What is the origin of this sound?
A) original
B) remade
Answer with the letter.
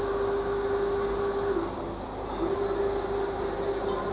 A